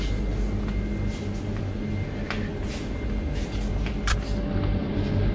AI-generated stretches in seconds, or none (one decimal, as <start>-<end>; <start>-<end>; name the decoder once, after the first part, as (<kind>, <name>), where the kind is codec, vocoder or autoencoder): none